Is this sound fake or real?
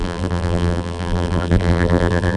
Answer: fake